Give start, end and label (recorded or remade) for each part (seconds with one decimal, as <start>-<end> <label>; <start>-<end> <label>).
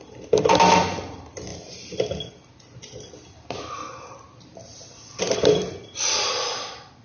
0.0-7.0 recorded